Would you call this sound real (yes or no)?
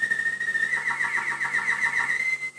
yes